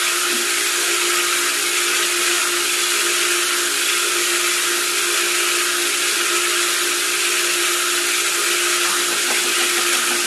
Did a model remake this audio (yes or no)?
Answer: no